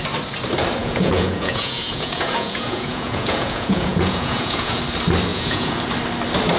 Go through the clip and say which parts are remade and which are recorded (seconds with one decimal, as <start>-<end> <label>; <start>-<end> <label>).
0.0-0.8 recorded; 0.8-4.8 remade; 4.8-5.3 recorded; 5.3-5.8 remade; 5.8-6.6 recorded